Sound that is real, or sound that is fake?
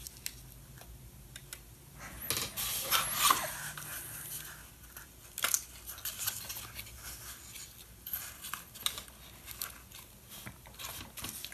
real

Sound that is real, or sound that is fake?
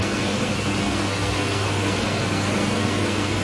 fake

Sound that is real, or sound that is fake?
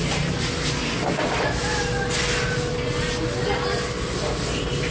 real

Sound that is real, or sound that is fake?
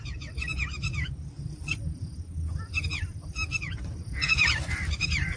real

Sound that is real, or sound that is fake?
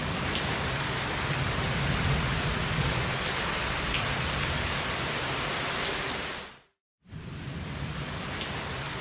real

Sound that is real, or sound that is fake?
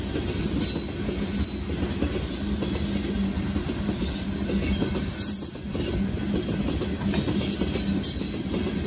real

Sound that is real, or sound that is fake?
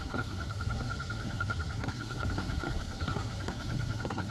fake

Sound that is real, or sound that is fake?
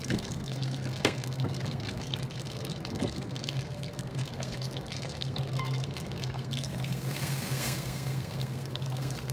fake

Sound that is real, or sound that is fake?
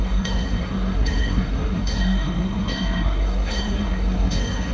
fake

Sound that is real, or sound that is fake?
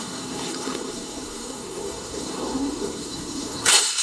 fake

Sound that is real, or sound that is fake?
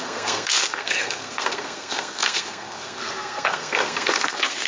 fake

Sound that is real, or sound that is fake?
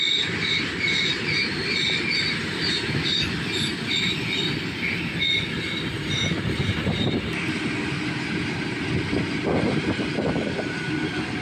real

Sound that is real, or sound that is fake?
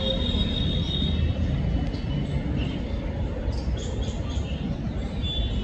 real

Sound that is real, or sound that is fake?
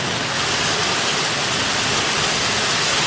real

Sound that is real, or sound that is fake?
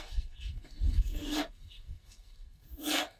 fake